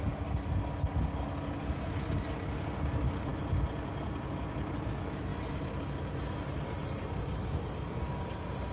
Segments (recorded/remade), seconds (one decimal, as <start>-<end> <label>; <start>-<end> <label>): 0.0-8.7 recorded